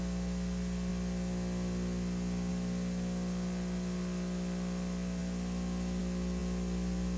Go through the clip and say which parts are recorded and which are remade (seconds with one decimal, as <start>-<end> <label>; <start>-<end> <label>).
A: 0.0-7.2 recorded